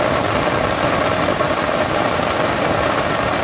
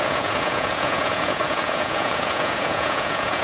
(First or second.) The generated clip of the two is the second